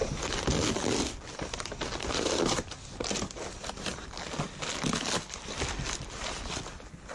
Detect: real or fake real